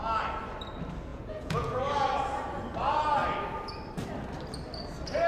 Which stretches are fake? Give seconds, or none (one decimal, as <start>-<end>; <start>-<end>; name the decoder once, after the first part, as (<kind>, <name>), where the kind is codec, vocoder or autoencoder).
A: 1.1-1.8 (vocoder, Vocos)